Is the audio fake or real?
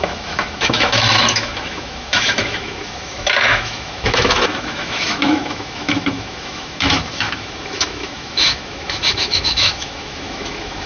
fake